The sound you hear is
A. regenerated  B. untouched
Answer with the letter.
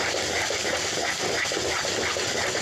B